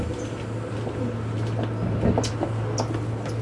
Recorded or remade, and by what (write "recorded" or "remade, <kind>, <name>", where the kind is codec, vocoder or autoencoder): recorded